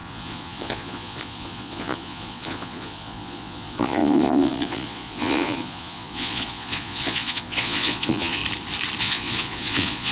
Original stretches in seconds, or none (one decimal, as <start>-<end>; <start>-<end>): 8.4-9.0